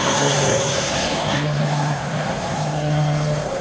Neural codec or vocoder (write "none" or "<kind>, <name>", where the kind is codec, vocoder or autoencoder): codec, SNAC